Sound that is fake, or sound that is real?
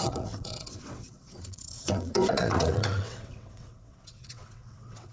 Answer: fake